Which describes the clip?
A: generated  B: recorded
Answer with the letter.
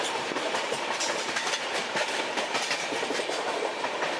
A